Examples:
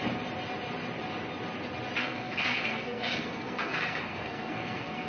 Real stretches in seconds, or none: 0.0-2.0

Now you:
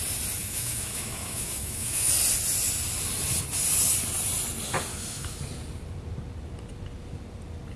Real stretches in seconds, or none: 0.0-0.4; 2.1-4.9; 5.4-7.8

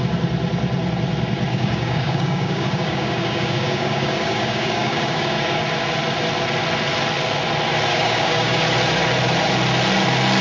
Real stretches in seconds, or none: 0.0-1.5; 5.6-7.9; 8.6-10.4

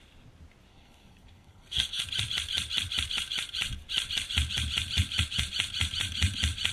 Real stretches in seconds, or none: 0.0-0.7; 2.0-6.7

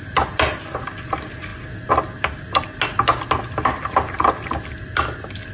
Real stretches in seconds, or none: 0.0-5.5